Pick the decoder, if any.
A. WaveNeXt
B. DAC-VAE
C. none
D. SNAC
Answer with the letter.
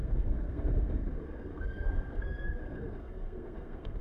D